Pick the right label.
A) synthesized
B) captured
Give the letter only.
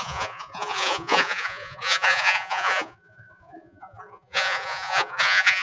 A